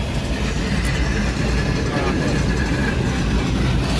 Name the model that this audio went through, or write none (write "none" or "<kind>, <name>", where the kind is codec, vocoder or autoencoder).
none